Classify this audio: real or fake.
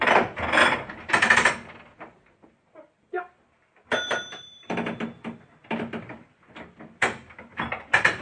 fake